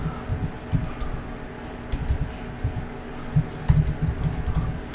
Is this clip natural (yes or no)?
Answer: yes